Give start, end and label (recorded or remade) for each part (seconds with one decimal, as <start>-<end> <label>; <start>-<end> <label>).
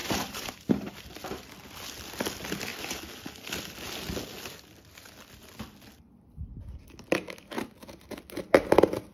0.0-1.0 remade; 1.0-9.1 recorded